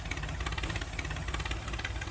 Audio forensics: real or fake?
real